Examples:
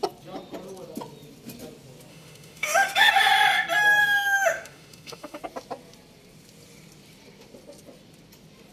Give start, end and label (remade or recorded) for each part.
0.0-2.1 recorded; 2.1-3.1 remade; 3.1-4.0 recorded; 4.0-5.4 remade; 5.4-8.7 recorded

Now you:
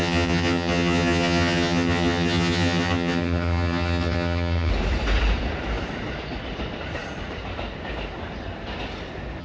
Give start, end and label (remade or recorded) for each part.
0.0-4.7 remade; 4.7-9.4 recorded